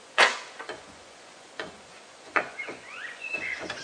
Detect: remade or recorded remade